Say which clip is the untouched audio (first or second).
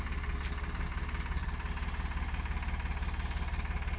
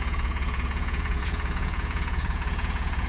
first